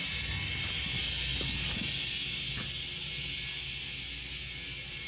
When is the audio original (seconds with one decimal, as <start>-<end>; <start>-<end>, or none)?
0.0-5.1